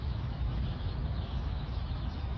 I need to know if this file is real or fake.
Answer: fake